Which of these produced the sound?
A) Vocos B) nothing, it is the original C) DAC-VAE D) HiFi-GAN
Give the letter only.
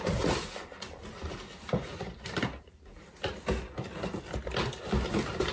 B